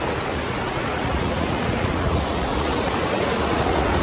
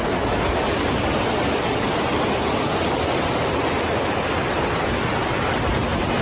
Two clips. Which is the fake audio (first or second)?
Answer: first